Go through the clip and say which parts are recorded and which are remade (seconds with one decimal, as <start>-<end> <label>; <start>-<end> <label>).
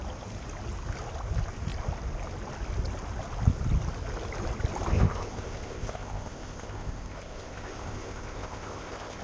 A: 0.0-4.9 recorded; 4.9-9.2 remade